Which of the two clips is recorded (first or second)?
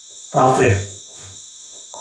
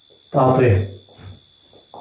second